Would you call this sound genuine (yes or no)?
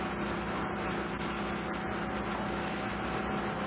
yes